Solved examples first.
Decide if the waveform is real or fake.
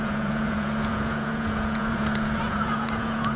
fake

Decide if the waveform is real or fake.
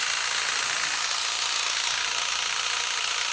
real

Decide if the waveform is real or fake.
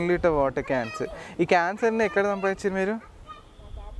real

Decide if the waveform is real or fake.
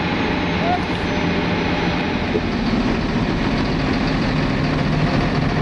real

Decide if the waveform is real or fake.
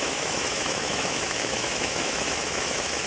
fake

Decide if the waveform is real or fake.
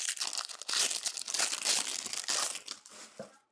real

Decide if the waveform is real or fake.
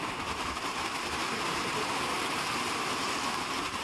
fake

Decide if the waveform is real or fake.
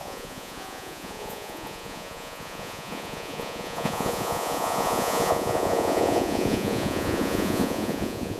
fake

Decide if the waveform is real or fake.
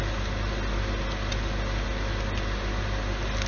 real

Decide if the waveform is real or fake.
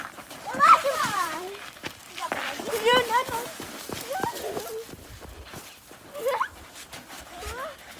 fake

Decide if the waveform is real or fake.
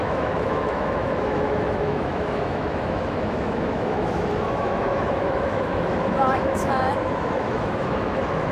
fake